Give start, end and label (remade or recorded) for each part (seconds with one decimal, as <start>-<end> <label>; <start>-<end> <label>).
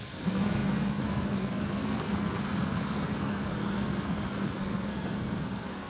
0.0-5.9 remade